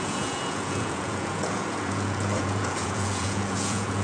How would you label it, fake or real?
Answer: fake